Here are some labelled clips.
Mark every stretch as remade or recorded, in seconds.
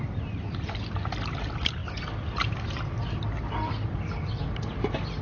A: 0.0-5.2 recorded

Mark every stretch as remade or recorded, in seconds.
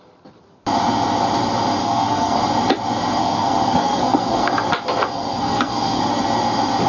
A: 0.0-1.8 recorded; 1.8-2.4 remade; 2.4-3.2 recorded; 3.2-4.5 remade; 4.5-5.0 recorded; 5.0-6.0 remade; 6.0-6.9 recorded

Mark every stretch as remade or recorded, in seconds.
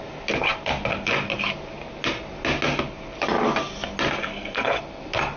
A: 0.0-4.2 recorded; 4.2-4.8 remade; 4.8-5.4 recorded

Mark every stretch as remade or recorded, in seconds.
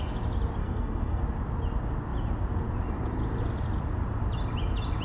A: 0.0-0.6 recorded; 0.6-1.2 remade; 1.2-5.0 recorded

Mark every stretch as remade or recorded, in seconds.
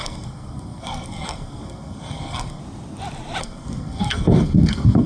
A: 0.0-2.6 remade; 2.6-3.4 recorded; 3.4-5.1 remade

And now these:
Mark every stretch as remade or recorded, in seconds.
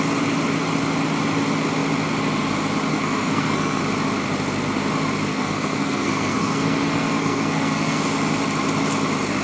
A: 0.0-2.9 recorded; 2.9-3.8 remade; 3.8-5.3 recorded; 5.3-8.0 remade; 8.0-9.4 recorded